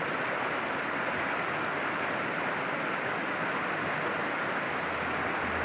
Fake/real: real